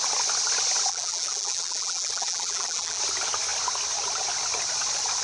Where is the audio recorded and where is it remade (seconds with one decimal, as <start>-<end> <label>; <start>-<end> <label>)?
0.0-0.9 recorded; 0.9-3.0 remade; 3.0-5.2 recorded